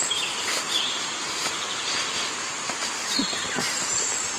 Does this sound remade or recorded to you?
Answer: remade